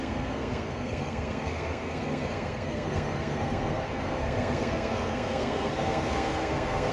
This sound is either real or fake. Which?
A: fake